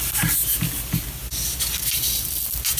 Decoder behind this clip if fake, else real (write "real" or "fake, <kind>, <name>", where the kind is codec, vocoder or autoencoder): real